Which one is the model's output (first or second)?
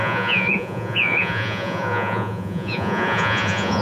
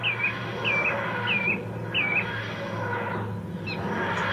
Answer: first